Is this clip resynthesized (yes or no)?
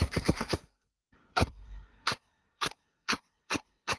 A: yes